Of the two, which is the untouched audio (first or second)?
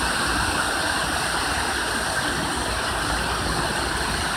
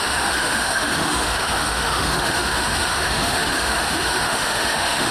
first